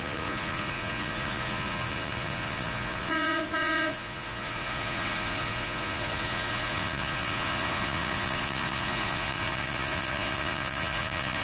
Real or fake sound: fake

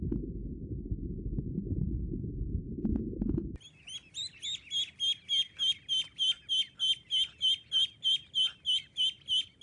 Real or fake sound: real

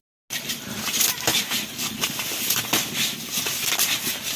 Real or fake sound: real